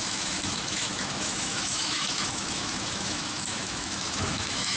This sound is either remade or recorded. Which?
remade